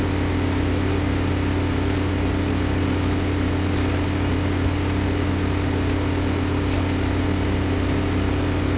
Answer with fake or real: real